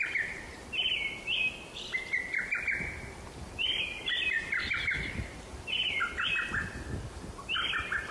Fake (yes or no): yes